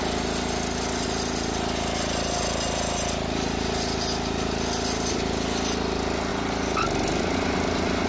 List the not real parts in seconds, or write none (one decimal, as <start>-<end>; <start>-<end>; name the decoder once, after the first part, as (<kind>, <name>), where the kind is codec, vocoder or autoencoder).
none